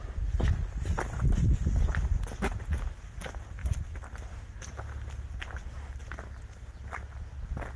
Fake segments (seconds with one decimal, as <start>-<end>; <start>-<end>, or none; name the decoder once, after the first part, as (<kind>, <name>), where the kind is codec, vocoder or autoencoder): none